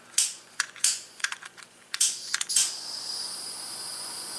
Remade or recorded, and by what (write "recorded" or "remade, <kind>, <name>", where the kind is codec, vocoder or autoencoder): remade, vocoder, Vocos